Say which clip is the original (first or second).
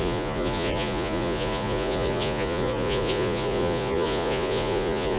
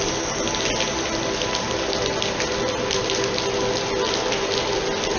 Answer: second